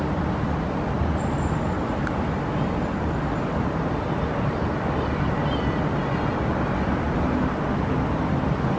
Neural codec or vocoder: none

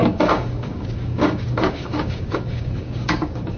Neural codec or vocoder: codec, DAC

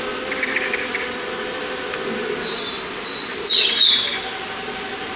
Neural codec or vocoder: none